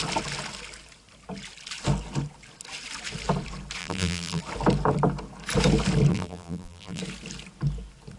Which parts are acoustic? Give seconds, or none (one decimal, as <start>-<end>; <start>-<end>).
0.0-3.8; 4.4-6.1; 7.0-8.2